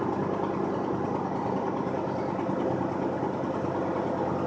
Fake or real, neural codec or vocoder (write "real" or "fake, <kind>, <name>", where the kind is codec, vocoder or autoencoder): real